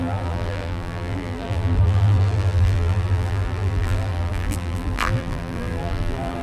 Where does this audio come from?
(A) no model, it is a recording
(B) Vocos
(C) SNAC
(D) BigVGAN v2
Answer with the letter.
D